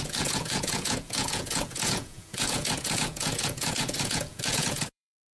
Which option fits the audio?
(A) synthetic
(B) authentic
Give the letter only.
A